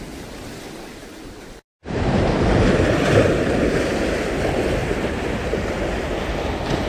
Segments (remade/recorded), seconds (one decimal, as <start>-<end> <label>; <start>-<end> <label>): 0.0-1.0 recorded; 1.0-3.0 remade; 3.0-4.8 recorded; 4.8-5.4 remade; 5.4-6.9 recorded